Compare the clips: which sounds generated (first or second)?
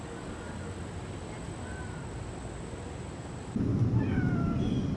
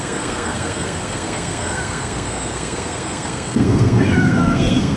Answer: second